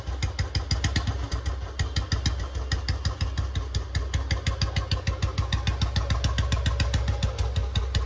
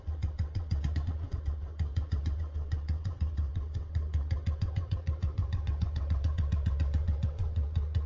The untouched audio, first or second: first